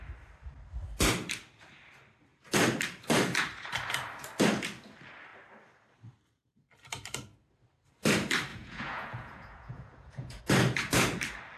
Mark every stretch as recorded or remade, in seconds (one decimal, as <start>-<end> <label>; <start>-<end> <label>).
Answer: 0.0-8.5 recorded; 8.5-10.4 remade; 10.4-11.6 recorded